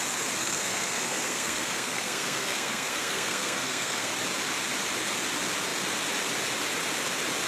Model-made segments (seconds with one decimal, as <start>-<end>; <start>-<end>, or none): 0.4-4.1

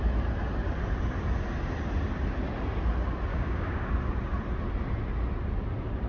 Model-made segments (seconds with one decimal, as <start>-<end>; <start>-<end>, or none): 3.3-3.9

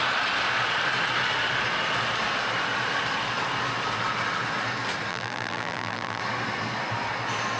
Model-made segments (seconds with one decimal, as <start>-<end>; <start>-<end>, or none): 5.1-6.2

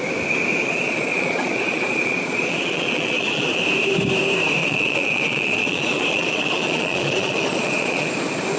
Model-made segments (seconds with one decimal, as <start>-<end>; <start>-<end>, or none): 0.6-3.6; 4.6-8.1

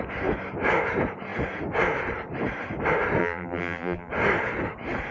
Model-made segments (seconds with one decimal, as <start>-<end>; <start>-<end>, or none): 3.2-4.1

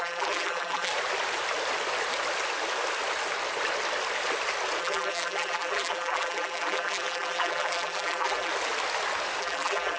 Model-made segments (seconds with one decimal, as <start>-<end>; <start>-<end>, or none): 0.0-0.9; 4.8-8.5; 9.4-10.0

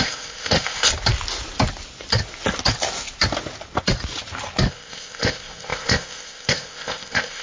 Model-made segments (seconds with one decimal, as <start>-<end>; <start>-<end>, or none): 0.0-0.9; 4.7-7.4

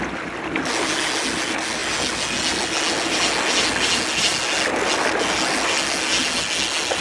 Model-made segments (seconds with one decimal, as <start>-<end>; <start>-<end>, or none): none